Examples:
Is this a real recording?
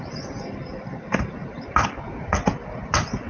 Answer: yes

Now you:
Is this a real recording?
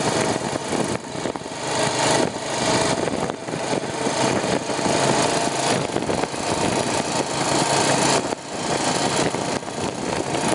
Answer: yes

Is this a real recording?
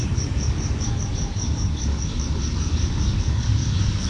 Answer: no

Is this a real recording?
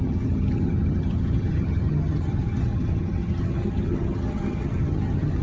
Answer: no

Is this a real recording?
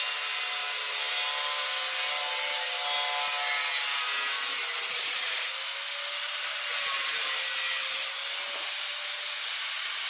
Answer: yes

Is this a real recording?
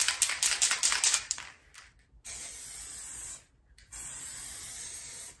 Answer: yes